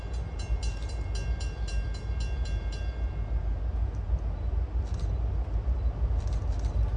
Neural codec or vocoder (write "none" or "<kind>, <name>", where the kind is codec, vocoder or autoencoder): none